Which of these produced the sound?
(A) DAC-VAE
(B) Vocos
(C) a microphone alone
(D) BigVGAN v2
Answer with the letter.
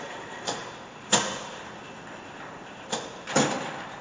D